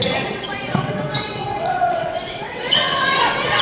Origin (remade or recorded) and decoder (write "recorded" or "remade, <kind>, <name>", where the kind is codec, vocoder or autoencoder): remade, vocoder, WaveNeXt